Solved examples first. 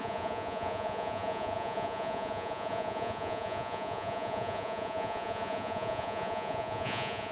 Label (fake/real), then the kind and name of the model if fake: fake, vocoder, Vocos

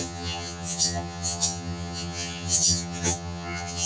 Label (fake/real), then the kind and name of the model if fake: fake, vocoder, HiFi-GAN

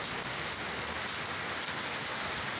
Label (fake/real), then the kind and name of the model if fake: real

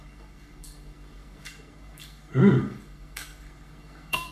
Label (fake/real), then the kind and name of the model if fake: fake, codec, SNAC